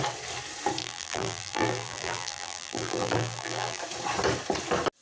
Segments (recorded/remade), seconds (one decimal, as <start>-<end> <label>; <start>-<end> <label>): 0.0-0.8 recorded; 0.8-3.8 remade; 3.8-5.0 recorded